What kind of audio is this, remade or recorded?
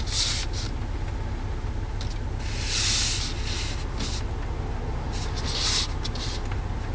recorded